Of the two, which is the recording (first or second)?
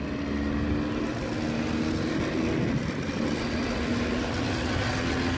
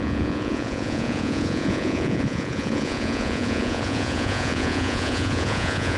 first